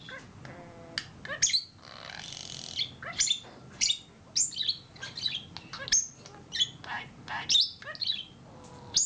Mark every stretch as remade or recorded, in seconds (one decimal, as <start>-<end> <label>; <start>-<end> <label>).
0.0-9.1 recorded